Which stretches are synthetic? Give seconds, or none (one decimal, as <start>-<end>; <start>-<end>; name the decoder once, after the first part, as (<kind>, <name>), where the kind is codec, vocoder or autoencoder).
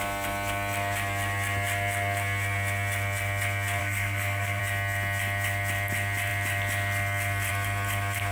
3.8-4.6 (codec, SNAC)